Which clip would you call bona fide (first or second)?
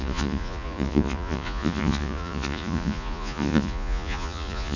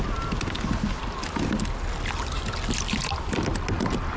second